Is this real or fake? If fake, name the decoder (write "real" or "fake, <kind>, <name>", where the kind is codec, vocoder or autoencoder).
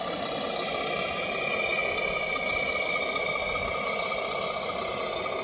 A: real